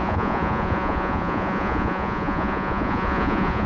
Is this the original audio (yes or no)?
no